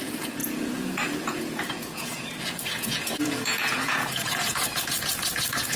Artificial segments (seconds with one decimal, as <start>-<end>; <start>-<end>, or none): 0.0-5.8